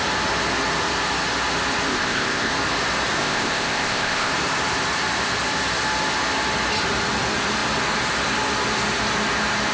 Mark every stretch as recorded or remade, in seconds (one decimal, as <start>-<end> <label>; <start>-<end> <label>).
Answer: 0.0-1.9 recorded; 1.9-2.5 remade; 2.5-3.2 recorded; 3.2-4.3 remade; 4.3-9.7 recorded